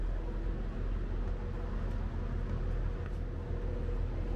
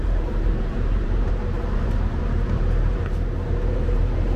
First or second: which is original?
first